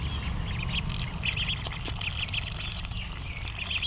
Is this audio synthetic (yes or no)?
no